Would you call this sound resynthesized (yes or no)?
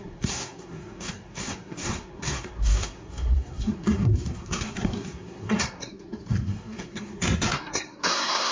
yes